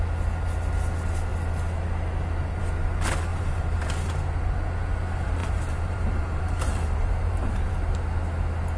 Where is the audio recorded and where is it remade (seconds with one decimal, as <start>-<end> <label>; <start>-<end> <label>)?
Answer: 0.0-3.3 recorded; 3.3-3.9 remade; 3.9-5.4 recorded; 5.4-7.7 remade; 7.7-8.8 recorded